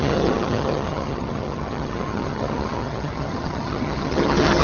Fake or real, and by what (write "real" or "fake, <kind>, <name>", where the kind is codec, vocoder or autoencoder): fake, vocoder, HiFi-GAN